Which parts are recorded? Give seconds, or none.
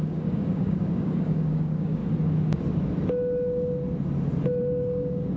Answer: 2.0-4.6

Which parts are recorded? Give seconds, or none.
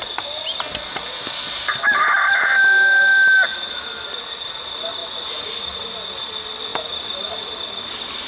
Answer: 0.0-8.3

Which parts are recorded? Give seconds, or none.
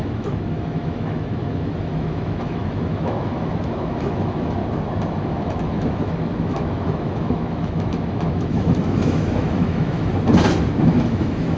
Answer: 4.6-5.1; 10.1-10.9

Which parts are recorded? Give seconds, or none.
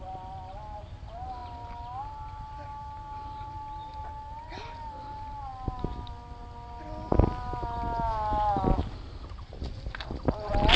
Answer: 0.0-10.8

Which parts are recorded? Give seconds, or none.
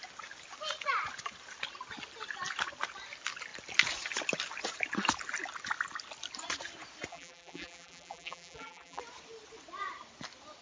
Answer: 0.0-7.1; 9.0-10.6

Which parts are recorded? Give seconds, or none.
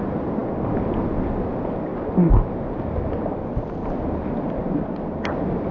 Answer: 0.0-5.7